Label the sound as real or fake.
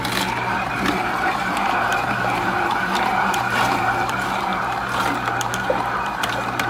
fake